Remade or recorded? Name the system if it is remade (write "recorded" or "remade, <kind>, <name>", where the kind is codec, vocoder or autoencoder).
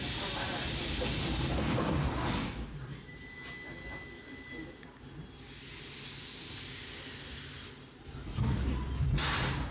recorded